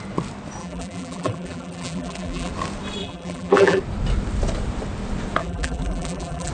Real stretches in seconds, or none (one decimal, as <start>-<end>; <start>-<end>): 0.0-0.6; 2.5-3.0; 3.8-5.4